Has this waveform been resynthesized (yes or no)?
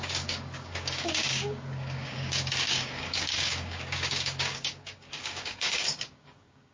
yes